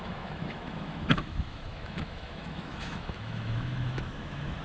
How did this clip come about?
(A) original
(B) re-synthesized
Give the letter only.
B